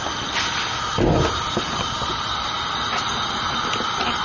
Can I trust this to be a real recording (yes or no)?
yes